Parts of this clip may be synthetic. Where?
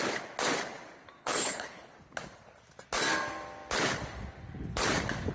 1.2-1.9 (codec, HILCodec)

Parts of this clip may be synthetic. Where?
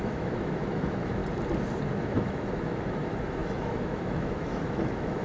0.0-1.2 (autoencoder, DAC-VAE); 2.0-5.2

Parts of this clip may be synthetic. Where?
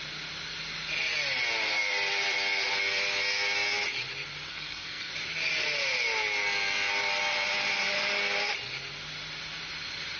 4.5-5.1 (codec, SNAC)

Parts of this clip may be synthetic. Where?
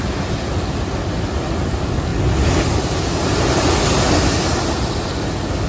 none